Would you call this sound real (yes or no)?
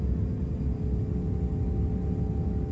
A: yes